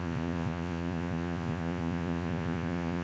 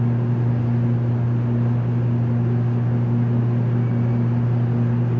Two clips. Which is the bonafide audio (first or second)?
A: second